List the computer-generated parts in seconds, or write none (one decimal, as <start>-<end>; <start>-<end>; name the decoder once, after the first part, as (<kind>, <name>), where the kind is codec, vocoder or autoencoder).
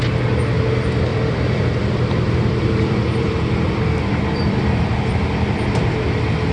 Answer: 1.1-5.0 (vocoder, BigVGAN v2)